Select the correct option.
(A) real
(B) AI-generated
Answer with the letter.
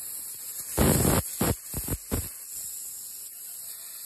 A